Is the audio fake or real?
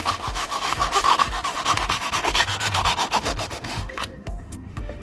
fake